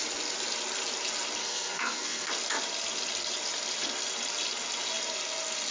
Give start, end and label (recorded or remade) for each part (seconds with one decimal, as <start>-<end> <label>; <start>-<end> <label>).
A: 0.0-1.4 recorded; 1.4-2.3 remade; 2.3-5.7 recorded